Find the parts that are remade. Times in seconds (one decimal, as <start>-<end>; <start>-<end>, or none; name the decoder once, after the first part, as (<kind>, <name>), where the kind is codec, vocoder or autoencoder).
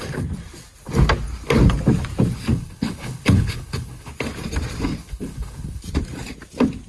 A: 2.5-4.1 (codec, HILCodec); 5.0-5.8